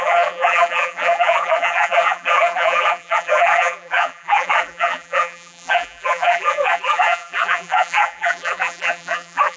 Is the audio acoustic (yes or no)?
no